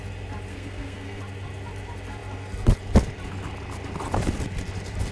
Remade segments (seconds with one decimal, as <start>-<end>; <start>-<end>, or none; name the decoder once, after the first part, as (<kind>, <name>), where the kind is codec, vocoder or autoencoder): 0.5-1.2 (codec, SNAC)